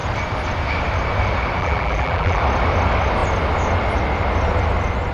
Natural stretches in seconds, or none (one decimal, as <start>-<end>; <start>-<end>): 0.0-1.6; 2.4-5.1